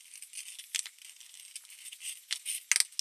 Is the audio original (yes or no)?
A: yes